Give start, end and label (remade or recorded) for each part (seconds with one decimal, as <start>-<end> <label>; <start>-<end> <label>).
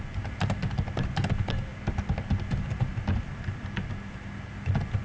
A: 0.0-5.0 recorded